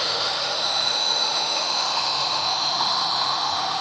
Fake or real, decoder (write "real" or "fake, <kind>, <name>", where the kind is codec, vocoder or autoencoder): fake, autoencoder, DAC-VAE